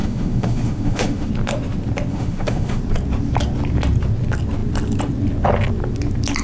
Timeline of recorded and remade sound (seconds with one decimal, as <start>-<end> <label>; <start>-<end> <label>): 0.0-1.3 remade; 1.3-2.1 recorded; 2.1-2.8 remade; 2.8-6.4 recorded